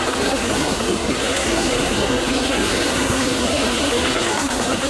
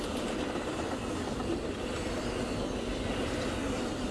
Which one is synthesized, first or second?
first